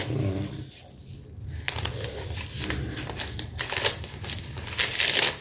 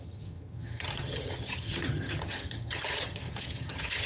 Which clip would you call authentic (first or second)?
first